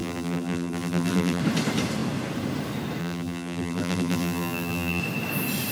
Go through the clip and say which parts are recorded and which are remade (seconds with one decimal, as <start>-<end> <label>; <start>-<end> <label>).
0.0-1.4 remade; 1.4-3.0 recorded; 3.0-5.0 remade; 5.0-5.7 recorded